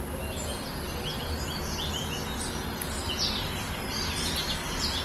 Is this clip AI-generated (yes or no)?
no